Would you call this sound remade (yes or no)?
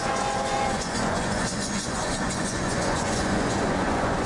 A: yes